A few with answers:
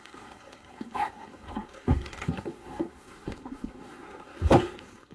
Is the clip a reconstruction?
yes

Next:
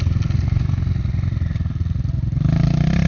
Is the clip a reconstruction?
no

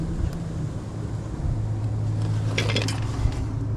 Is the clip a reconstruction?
no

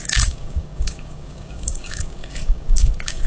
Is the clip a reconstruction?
yes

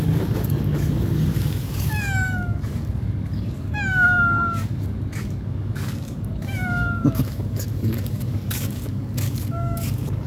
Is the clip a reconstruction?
yes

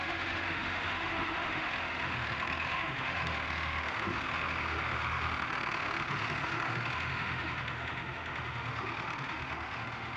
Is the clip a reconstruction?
yes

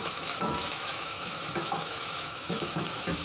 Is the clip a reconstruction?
yes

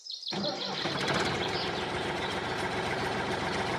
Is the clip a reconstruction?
yes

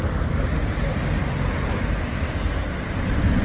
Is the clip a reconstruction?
no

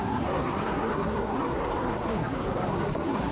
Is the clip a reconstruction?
yes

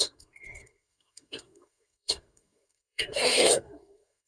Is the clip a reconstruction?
yes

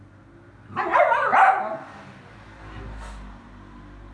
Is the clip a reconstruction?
no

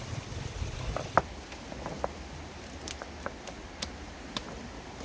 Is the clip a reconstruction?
no